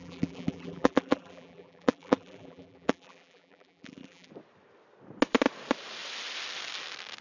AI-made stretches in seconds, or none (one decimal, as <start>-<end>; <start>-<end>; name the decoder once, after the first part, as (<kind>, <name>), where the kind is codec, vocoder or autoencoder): 0.0-4.3 (vocoder, BigVGAN v2)